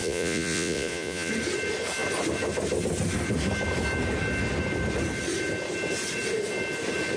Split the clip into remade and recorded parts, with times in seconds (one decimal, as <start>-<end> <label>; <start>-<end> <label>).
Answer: 0.0-1.3 remade; 1.3-7.2 recorded

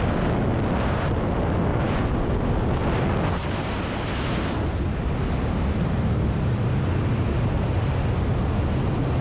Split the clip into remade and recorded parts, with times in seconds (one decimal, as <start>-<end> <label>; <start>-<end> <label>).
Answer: 0.0-1.7 recorded; 1.7-2.2 remade; 2.2-9.2 recorded

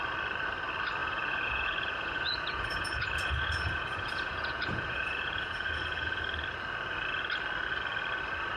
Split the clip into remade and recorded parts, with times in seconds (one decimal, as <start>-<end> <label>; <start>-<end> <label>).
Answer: 0.0-1.0 recorded; 1.0-6.2 remade; 6.2-8.6 recorded